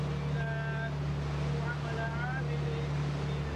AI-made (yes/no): no